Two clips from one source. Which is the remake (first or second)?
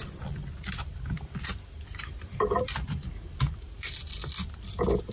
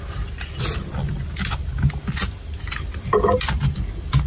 first